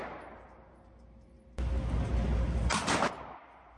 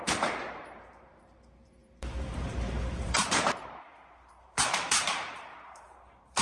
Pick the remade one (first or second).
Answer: second